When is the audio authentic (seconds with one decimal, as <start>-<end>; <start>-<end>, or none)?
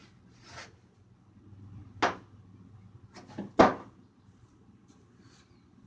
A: 0.0-5.9